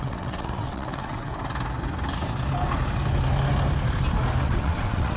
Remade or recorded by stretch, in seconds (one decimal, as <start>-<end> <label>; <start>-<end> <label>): 0.0-1.3 remade; 1.3-4.4 recorded; 4.4-5.2 remade